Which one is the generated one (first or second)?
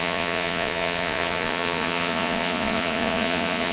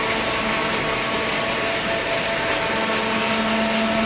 first